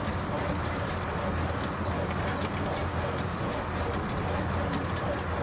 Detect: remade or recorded recorded